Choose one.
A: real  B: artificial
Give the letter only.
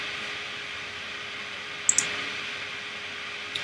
A